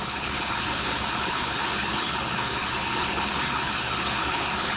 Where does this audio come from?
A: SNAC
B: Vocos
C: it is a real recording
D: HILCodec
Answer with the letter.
D